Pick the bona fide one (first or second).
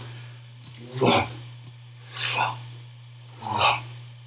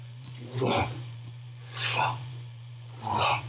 first